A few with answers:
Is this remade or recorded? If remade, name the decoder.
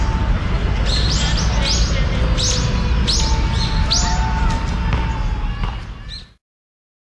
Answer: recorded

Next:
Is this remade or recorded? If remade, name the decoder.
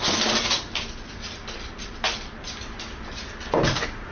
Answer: recorded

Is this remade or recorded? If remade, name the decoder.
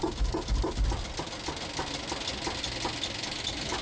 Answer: recorded